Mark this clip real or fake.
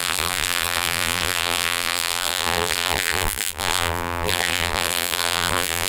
fake